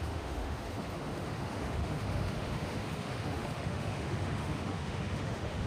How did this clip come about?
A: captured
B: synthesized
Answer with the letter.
B